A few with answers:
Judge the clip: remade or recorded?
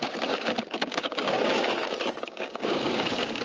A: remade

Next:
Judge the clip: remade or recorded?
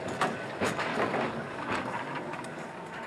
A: remade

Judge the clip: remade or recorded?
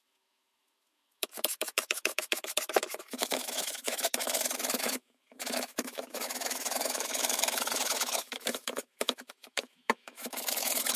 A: remade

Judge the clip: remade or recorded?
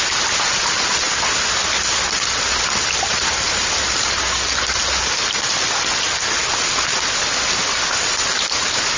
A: recorded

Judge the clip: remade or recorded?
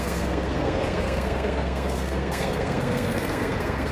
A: remade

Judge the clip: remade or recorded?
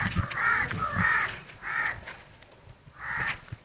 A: remade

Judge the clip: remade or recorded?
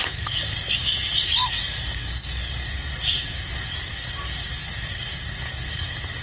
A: remade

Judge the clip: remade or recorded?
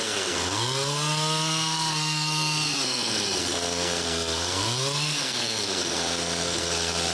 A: remade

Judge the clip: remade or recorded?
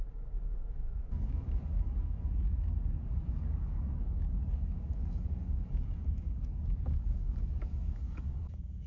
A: remade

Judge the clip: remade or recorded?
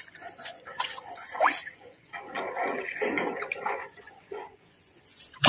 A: remade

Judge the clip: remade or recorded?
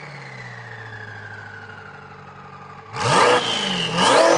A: recorded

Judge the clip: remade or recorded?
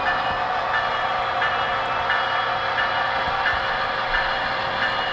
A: recorded